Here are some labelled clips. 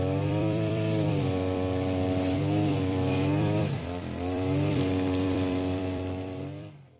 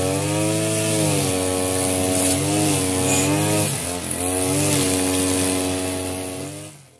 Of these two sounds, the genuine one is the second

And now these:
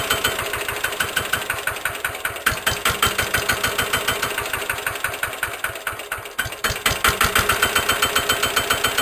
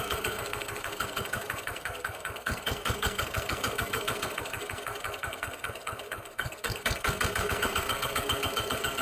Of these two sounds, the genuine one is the first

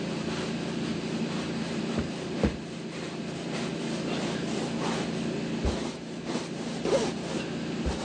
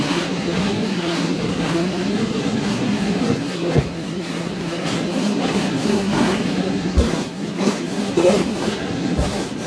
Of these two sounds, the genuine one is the first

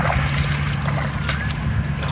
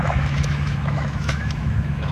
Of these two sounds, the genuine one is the first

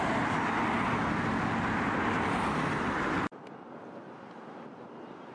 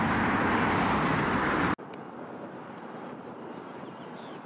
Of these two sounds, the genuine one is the first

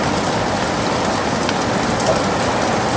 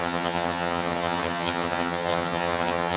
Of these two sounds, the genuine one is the first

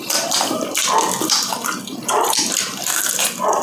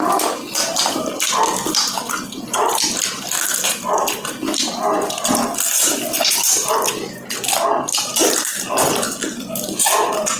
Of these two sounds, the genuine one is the second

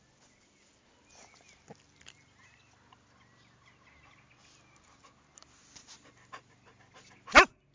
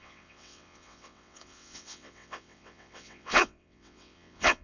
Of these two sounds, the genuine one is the first